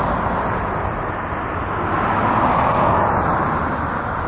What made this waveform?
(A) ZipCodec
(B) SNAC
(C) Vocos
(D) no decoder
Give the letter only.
D